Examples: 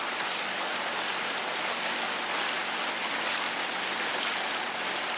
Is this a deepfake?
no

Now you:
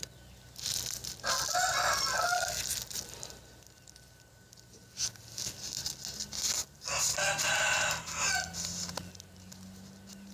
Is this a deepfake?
no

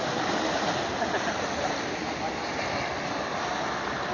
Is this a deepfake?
no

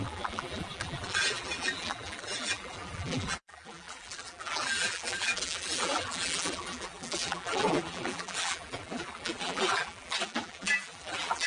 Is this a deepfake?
yes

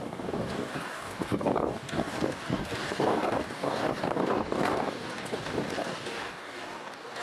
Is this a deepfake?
yes